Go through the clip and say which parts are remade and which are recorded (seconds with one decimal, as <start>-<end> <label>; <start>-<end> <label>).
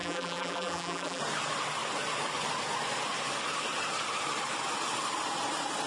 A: 0.0-1.2 remade; 1.2-5.9 recorded